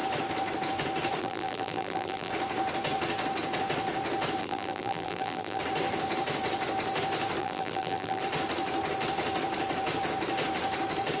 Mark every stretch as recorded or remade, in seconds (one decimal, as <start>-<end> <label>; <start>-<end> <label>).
0.0-1.2 recorded; 1.2-2.3 remade; 2.3-4.4 recorded; 4.4-5.6 remade; 5.6-7.4 recorded; 7.4-8.2 remade; 8.2-11.2 recorded

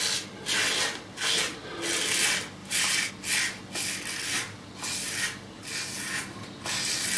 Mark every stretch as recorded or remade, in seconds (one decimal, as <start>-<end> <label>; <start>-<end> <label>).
0.0-2.6 recorded; 2.6-3.1 remade; 3.1-7.2 recorded

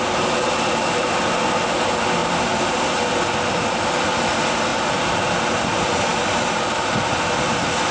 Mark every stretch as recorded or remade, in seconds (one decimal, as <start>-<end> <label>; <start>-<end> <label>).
0.0-2.2 recorded; 2.2-3.1 remade; 3.1-4.7 recorded; 4.7-5.2 remade; 5.2-7.9 recorded

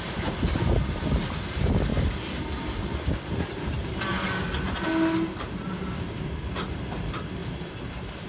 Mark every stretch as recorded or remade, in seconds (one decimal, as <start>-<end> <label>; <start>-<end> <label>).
0.0-1.9 remade; 1.9-6.5 recorded; 6.5-7.4 remade; 7.4-8.3 recorded

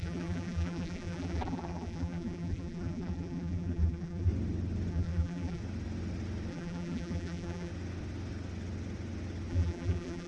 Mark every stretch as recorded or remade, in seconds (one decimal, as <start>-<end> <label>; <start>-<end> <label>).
0.0-4.3 remade; 4.3-4.9 recorded; 4.9-5.6 remade; 5.6-6.5 recorded; 6.5-7.7 remade; 7.7-9.5 recorded; 9.5-10.3 remade

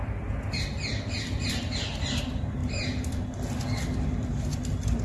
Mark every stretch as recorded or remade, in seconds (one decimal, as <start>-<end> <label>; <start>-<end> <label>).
0.0-2.6 recorded; 2.6-3.2 remade; 3.2-5.0 recorded